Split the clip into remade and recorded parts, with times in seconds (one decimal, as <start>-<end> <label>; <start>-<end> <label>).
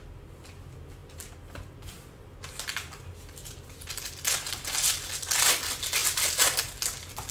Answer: 0.0-7.3 recorded